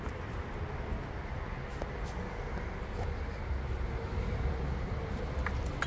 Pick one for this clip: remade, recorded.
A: recorded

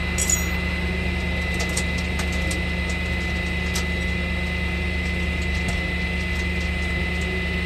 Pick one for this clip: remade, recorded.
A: recorded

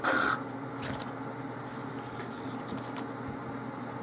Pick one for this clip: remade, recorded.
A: recorded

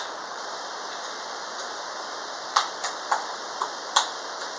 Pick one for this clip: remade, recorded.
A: recorded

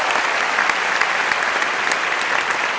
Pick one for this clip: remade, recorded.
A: recorded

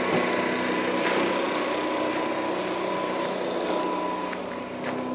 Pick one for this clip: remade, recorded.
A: recorded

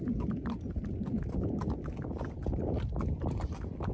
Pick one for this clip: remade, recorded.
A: recorded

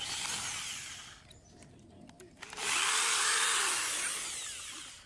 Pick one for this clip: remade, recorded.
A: recorded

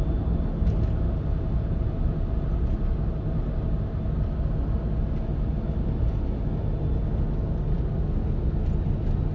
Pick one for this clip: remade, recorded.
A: recorded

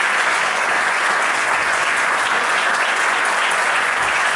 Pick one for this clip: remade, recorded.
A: remade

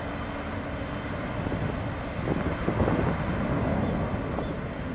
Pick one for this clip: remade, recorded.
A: recorded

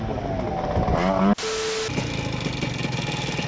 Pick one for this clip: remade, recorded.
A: recorded